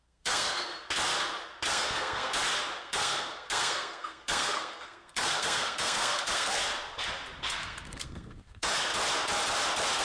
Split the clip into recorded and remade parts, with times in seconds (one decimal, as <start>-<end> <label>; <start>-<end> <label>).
0.0-0.7 remade; 0.7-1.7 recorded; 1.7-2.3 remade; 2.3-2.8 recorded; 2.8-6.6 remade; 6.6-7.4 recorded; 7.4-8.9 remade; 8.9-10.0 recorded

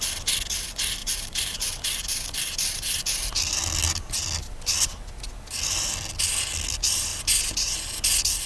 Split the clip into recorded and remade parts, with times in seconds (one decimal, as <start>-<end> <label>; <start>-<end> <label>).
0.0-1.0 recorded; 1.0-1.7 remade; 1.7-8.5 recorded

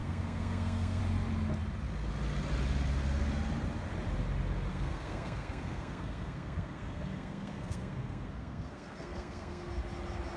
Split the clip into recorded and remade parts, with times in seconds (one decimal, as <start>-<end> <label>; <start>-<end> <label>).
0.0-1.0 remade; 1.0-4.7 recorded; 4.7-9.7 remade; 9.7-10.4 recorded

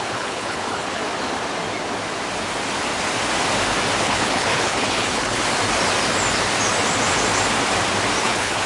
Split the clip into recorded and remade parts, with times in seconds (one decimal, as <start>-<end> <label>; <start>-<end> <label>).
0.0-1.0 remade; 1.0-4.0 recorded; 4.0-5.4 remade; 5.4-8.2 recorded; 8.2-8.7 remade

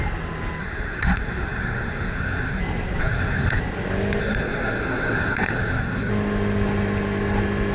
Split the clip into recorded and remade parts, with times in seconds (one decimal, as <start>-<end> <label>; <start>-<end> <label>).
0.0-0.6 recorded; 0.6-2.6 remade; 2.6-3.0 recorded; 3.0-3.6 remade; 3.6-4.2 recorded; 4.2-6.1 remade; 6.1-7.7 recorded

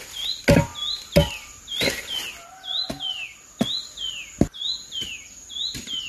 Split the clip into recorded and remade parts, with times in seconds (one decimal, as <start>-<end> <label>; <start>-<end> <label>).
0.0-6.1 recorded

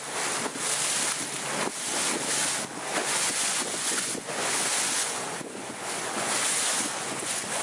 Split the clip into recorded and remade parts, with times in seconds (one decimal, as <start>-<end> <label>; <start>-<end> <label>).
0.0-3.0 recorded; 3.0-7.6 remade

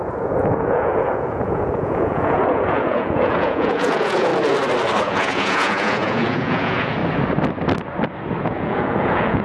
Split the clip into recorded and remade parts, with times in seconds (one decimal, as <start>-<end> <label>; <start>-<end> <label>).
0.0-4.3 remade; 4.3-5.0 recorded; 5.0-7.0 remade; 7.0-8.4 recorded; 8.4-9.4 remade